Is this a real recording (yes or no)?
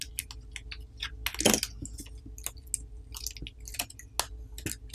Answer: yes